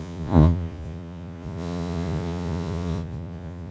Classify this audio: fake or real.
fake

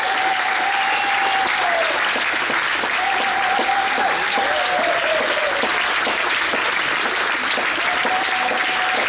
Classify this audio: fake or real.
real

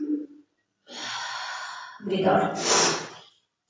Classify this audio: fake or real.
real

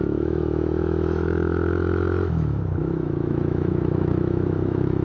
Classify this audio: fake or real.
fake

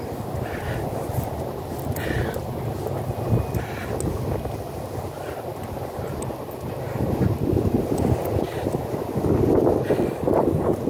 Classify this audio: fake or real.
real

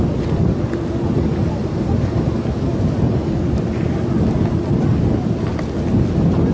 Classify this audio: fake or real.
real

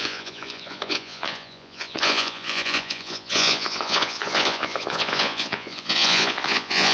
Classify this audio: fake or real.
fake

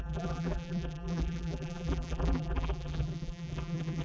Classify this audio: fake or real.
fake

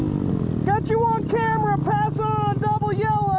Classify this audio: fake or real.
real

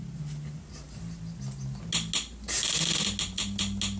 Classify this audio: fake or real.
real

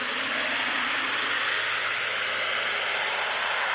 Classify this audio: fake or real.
real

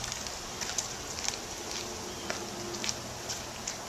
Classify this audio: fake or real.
real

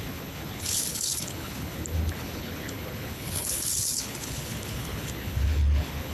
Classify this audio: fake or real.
fake